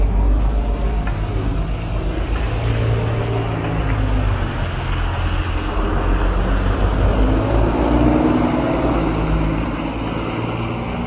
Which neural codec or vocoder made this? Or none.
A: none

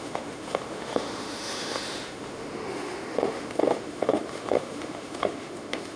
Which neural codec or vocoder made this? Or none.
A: autoencoder, DAC-VAE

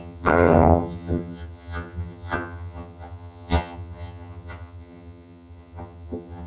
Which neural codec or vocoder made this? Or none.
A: vocoder, HiFi-GAN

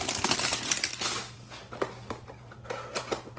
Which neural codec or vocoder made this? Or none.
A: none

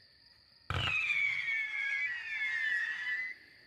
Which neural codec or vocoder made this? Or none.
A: none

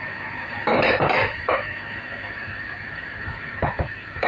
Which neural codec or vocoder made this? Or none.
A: autoencoder, DAC-VAE